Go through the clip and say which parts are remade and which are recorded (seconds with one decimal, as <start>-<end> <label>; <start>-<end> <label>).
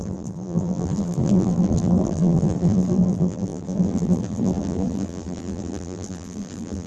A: 0.0-6.9 remade